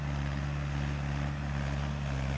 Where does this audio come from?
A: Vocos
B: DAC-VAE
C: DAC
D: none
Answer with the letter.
D